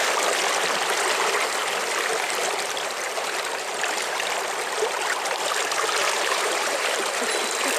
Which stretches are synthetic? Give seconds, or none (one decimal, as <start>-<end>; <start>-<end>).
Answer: 3.1-4.2; 6.0-7.3